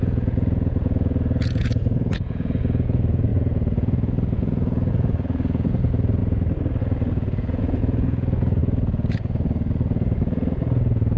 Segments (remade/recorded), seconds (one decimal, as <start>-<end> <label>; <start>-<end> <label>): 0.0-6.2 remade; 6.2-6.8 recorded; 6.8-11.2 remade